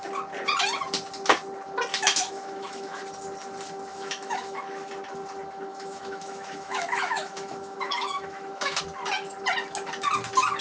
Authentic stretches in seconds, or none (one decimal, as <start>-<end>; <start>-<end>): 0.0-1.9; 3.0-3.9; 4.9-5.7; 8.8-10.6